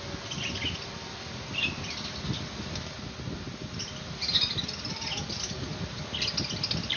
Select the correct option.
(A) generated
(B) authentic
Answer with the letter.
B